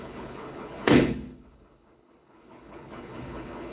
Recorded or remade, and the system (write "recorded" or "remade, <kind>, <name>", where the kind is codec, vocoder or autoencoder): remade, codec, HILCodec